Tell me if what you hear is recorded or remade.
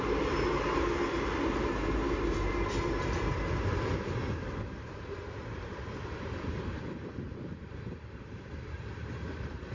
remade